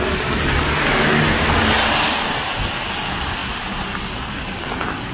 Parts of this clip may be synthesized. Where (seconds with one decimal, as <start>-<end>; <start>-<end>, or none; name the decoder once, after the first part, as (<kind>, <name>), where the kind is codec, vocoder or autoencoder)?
none